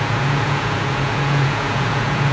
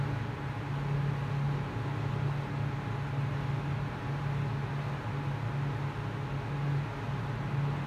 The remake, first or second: first